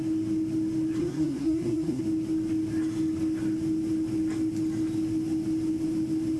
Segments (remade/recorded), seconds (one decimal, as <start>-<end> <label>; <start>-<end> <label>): 0.0-1.0 recorded; 1.0-2.0 remade; 2.0-6.4 recorded